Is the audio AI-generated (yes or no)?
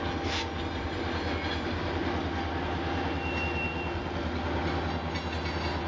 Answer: no